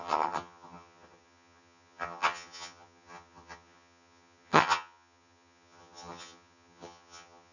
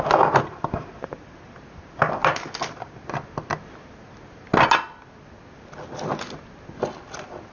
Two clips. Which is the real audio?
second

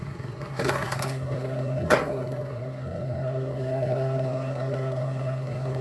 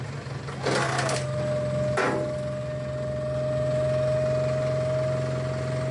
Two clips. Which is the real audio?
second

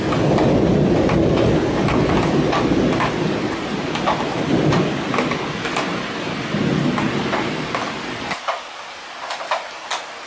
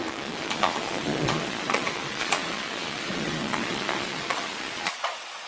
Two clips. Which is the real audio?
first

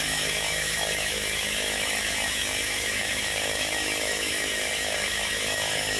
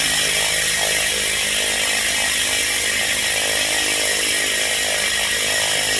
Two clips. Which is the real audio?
second